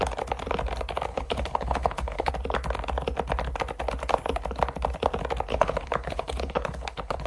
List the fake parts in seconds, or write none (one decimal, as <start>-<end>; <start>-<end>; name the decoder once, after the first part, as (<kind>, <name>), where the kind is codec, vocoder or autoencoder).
1.1-2.3 (codec, HILCodec); 5.5-7.3